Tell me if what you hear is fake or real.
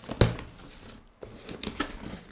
real